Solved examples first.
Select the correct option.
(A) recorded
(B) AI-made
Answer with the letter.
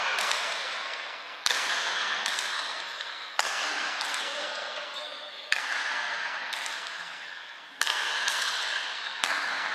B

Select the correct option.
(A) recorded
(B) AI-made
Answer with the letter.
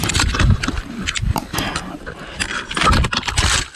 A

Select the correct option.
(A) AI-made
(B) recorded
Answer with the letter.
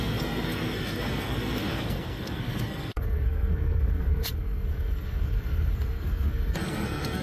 A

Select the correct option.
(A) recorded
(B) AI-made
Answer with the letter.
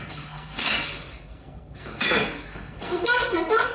B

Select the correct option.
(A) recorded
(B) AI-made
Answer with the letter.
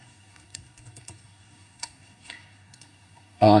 B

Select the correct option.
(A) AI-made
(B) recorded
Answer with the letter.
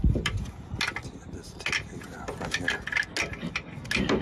B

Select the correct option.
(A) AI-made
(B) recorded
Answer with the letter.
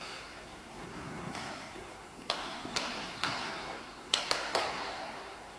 A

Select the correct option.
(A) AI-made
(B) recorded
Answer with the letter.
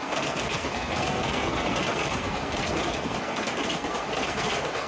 A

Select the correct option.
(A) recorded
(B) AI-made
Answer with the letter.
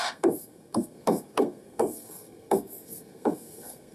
B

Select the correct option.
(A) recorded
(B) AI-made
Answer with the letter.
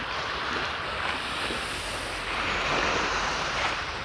A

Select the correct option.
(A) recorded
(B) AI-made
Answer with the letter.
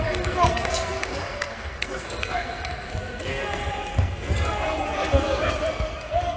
B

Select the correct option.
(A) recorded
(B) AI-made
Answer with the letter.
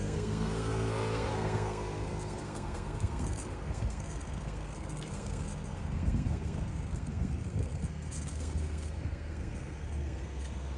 B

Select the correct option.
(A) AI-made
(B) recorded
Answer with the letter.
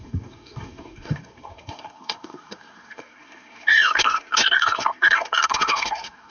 A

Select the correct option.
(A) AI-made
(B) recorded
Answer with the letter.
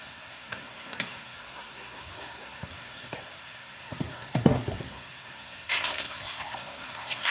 A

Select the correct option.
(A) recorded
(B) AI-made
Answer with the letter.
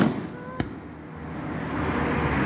A